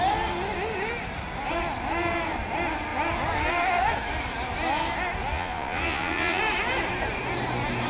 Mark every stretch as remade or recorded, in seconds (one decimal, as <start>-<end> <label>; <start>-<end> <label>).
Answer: 0.0-5.3 recorded; 5.3-6.4 remade; 6.4-7.9 recorded